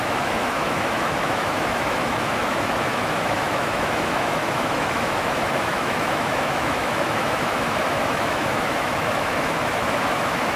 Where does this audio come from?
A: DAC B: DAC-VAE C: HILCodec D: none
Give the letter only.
B